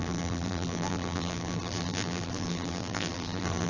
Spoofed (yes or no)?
yes